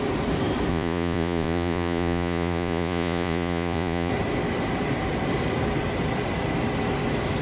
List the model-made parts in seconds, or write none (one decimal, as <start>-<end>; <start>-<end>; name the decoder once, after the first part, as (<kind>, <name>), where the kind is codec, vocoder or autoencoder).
0.7-4.1 (vocoder, Vocos)